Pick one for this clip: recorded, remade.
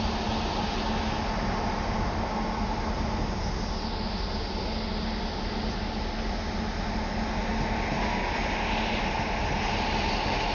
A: recorded